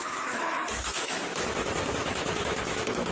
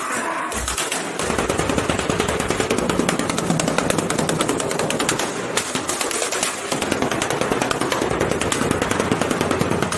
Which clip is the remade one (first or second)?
first